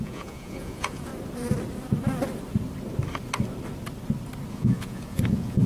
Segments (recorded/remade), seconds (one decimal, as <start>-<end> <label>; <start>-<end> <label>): 0.0-1.1 remade; 1.1-4.5 recorded; 4.5-5.7 remade